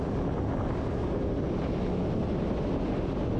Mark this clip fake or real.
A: real